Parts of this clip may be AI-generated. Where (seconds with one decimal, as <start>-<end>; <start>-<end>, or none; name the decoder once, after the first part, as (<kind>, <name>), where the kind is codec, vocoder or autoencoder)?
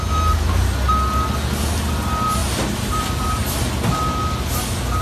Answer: 2.4-3.9 (vocoder, BigVGAN v2)